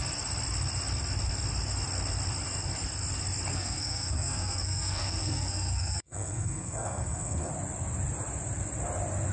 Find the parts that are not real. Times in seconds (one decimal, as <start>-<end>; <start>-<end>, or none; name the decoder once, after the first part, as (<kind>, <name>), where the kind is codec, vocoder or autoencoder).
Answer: 3.5-7.5 (codec, SNAC)